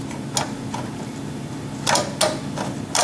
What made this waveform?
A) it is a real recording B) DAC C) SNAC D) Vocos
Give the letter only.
A